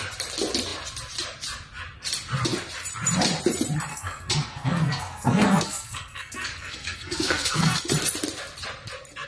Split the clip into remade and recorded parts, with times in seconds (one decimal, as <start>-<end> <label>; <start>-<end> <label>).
0.0-3.9 recorded; 3.9-7.8 remade; 7.8-9.3 recorded